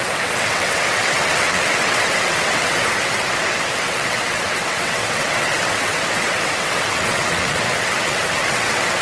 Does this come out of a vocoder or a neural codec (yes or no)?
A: yes